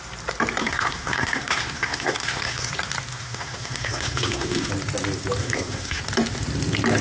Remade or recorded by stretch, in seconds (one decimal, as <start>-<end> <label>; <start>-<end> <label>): 0.0-0.6 recorded; 0.6-2.7 remade; 2.7-3.1 recorded; 3.1-4.7 remade; 4.7-5.4 recorded; 5.4-6.0 remade; 6.0-7.0 recorded